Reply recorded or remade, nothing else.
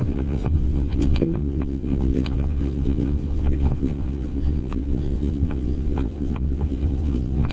remade